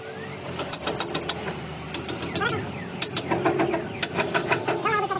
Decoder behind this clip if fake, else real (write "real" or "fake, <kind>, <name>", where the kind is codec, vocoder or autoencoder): real